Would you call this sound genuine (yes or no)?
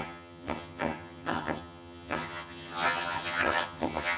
no